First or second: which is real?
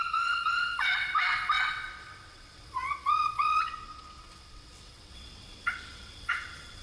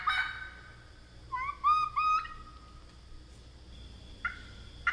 second